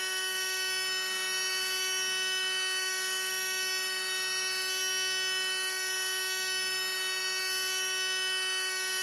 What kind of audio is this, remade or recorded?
remade